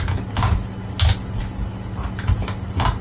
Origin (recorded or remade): recorded